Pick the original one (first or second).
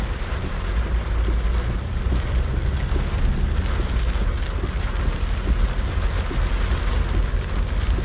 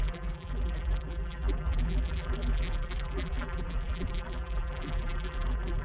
first